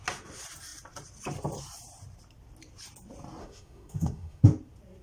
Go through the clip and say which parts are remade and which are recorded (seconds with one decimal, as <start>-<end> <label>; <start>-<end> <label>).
0.0-3.4 recorded; 3.4-4.4 remade; 4.4-5.0 recorded